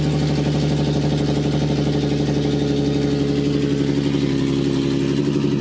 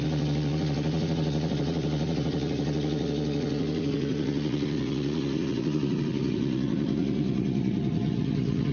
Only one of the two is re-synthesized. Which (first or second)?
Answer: second